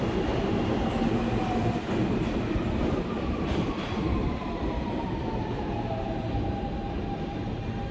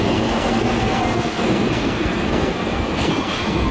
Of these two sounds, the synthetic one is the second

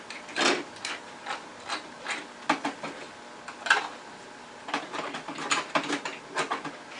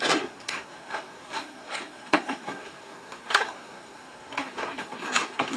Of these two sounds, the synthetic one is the second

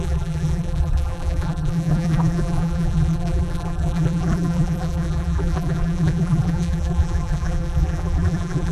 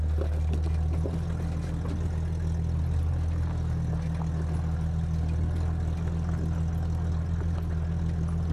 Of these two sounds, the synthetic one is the first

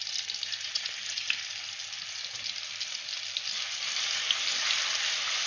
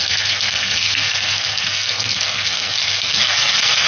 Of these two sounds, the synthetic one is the second